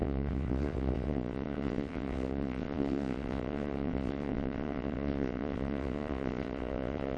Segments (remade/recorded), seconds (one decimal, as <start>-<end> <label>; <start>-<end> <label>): 0.0-7.2 remade